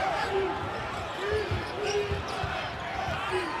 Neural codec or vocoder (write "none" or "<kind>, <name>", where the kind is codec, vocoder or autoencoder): none